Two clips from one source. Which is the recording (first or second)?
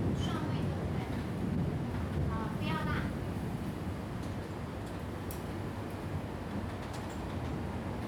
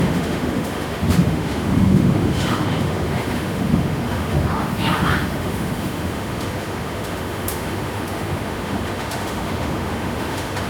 first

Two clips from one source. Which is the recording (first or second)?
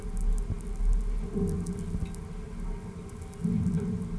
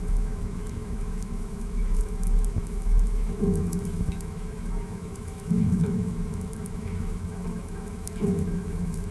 first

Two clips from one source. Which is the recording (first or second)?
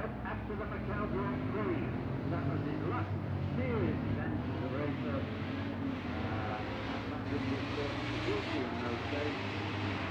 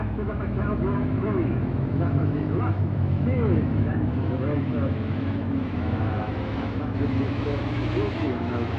first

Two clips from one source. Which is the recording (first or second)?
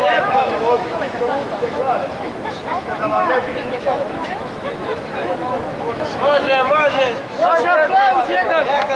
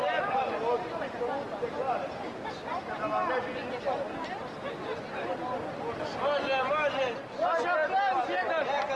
second